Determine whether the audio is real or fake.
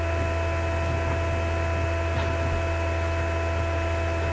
real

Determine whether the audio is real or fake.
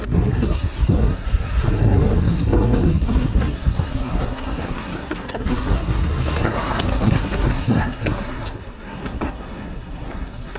fake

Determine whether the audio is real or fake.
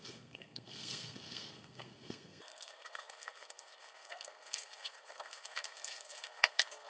fake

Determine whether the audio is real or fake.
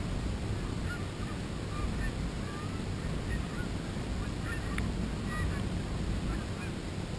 real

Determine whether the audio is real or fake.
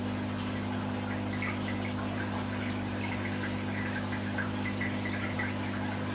real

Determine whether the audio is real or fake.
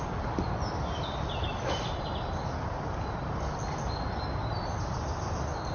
real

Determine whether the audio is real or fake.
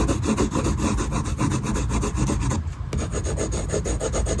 real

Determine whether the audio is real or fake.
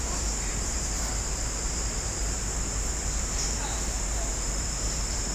fake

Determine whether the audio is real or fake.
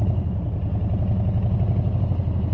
real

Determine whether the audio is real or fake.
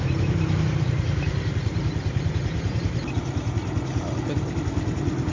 real